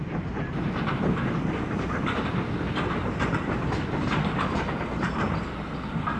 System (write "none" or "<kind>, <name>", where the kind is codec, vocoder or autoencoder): none